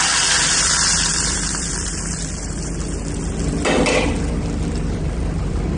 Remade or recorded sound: remade